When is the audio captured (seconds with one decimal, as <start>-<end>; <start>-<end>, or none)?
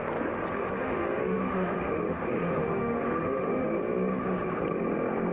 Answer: 0.0-0.6; 3.8-5.3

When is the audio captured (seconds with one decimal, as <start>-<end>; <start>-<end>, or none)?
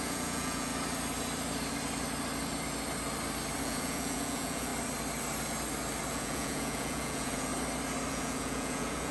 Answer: 0.7-3.6; 4.7-6.1; 7.5-8.1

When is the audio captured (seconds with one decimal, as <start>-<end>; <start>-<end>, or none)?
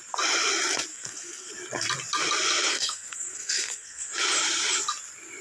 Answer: 0.0-0.9; 1.5-2.7; 4.1-5.4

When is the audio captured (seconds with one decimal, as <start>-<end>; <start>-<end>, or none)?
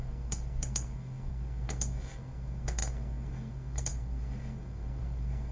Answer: none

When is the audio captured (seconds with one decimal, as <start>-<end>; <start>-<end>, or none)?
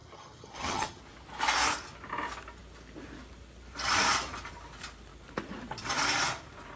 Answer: 1.0-6.8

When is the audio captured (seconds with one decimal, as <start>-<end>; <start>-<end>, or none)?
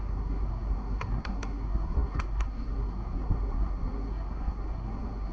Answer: none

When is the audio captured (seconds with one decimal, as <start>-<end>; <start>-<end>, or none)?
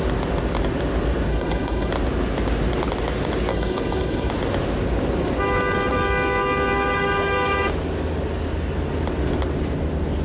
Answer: 0.0-1.3; 1.9-3.5; 4.3-10.2